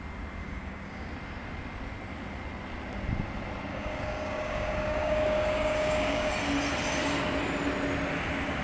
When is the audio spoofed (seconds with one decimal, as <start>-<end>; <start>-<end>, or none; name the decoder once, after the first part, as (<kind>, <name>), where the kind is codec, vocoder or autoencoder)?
0.4-1.1 (codec, DAC); 3.7-6.3